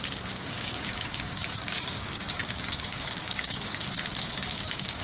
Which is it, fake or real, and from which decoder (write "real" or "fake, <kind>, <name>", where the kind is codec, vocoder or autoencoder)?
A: fake, codec, DAC